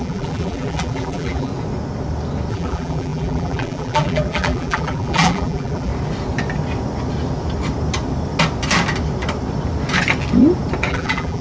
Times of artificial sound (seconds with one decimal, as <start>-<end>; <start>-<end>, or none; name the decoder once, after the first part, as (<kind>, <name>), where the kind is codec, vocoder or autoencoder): 0.0-1.5 (vocoder, BigVGAN v2); 2.5-5.9; 10.9-11.4

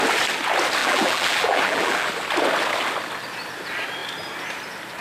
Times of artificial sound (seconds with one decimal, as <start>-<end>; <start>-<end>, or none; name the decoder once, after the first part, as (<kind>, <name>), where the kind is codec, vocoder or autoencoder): 0.8-2.1 (vocoder, BigVGAN v2)

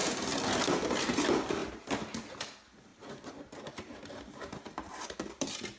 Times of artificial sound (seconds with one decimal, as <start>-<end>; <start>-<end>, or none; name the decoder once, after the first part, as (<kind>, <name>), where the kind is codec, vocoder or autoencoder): 1.6-2.2 (vocoder, BigVGAN v2); 2.9-5.8

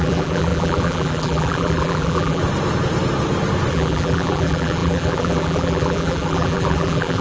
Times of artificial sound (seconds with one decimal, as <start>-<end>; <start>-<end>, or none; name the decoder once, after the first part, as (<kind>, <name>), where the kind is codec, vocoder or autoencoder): 0.0-2.4 (vocoder, BigVGAN v2); 3.7-7.2